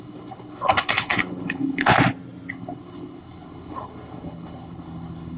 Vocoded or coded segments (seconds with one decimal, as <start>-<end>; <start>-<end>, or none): 0.0-1.9; 2.5-5.4